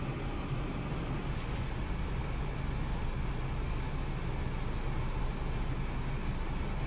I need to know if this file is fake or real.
real